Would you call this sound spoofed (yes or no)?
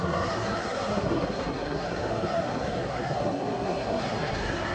yes